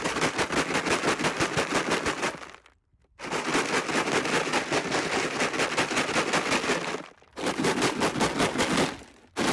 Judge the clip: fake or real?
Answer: real